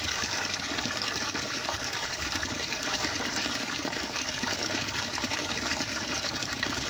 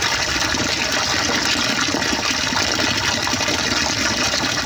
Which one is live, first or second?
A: second